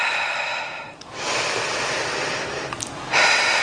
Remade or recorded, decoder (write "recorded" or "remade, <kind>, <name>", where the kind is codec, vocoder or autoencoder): remade, vocoder, BigVGAN v2